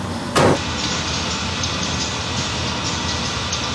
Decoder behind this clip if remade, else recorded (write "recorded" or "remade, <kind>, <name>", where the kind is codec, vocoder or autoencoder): recorded